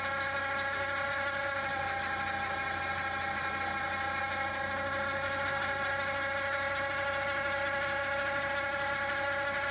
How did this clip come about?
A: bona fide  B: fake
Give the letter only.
A